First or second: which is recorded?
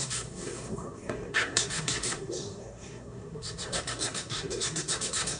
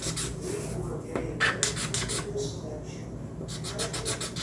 second